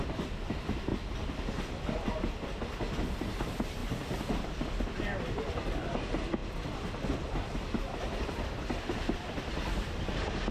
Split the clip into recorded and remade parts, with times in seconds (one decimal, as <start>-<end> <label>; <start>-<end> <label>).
0.0-0.9 remade; 0.9-2.2 recorded; 2.2-10.5 remade